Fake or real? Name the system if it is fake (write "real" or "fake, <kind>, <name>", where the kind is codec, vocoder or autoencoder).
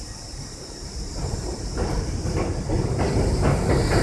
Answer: real